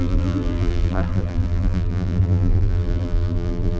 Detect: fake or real fake